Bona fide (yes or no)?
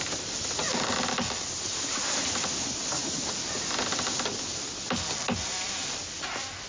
yes